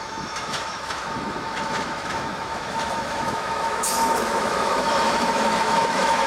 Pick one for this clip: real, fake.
fake